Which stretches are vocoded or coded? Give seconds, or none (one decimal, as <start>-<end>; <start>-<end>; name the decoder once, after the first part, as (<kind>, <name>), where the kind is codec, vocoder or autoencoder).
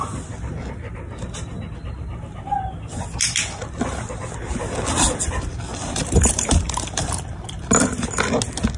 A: 2.0-2.5 (vocoder, BigVGAN v2); 5.7-8.1